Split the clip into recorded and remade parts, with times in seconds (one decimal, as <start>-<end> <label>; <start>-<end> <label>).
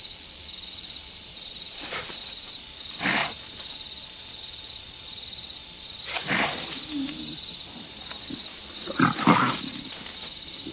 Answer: 0.0-1.3 recorded; 1.3-2.6 remade; 2.6-10.7 recorded